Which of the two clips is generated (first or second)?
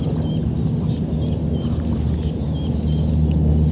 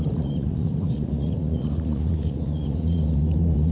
second